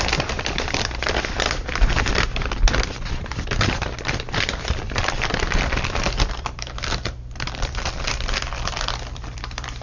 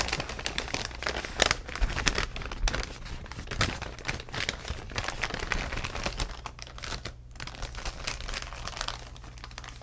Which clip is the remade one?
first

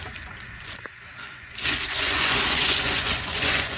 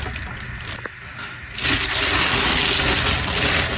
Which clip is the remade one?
first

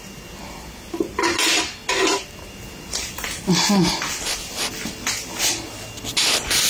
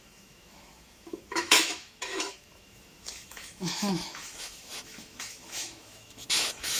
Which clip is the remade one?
second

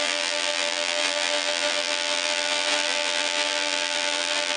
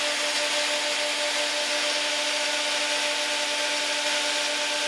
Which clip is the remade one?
first